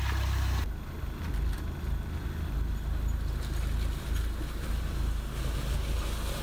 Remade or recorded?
recorded